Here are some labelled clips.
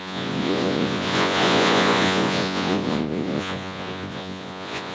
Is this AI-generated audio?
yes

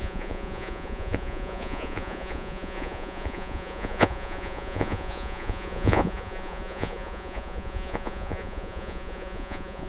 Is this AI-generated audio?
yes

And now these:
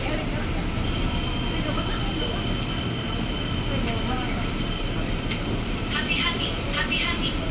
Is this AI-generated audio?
no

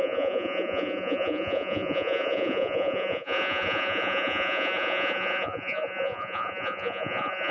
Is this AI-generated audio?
yes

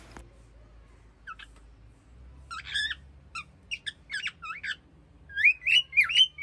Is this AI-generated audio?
no